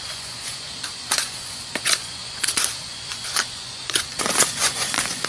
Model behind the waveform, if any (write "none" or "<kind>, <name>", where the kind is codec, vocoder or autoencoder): vocoder, Vocos